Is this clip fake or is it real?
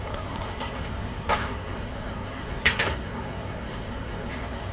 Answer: fake